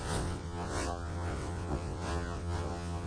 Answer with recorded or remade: remade